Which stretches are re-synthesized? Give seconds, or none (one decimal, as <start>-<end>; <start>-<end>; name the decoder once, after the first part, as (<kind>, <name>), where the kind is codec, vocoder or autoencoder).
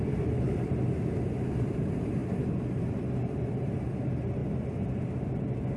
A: 0.0-2.2 (vocoder, BigVGAN v2); 2.8-4.4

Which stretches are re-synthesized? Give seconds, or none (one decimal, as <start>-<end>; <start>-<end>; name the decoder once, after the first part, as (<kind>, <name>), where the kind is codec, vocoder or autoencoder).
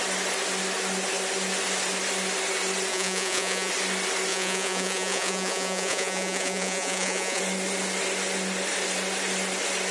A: 2.9-3.7 (vocoder, Vocos); 4.3-7.4